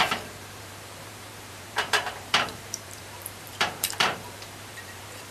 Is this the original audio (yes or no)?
no